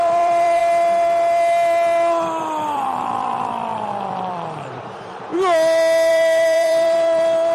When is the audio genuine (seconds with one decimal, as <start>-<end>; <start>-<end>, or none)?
0.6-2.4; 5.3-6.1